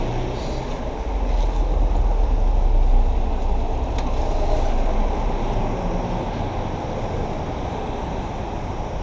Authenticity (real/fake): real